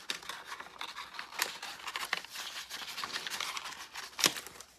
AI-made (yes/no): no